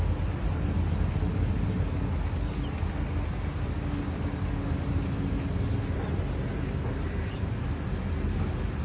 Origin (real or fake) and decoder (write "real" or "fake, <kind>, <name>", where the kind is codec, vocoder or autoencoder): real